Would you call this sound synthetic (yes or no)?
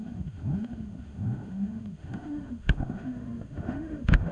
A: yes